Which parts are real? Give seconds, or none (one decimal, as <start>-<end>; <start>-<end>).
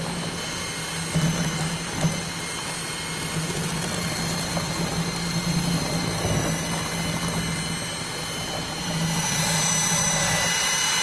0.0-11.0